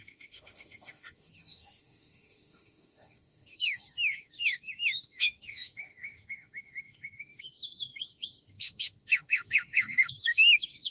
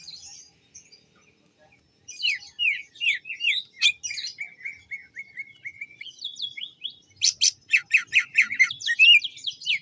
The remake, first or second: first